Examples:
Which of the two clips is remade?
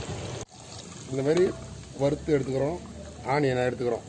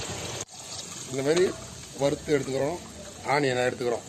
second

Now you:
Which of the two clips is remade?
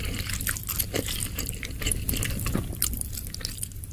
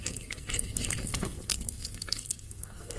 second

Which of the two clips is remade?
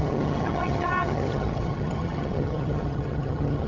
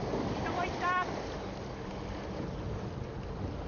first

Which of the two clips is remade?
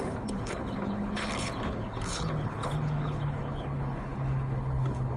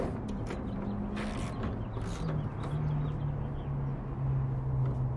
first